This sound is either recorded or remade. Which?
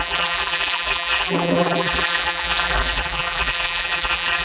remade